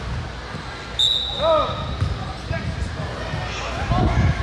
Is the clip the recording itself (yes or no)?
yes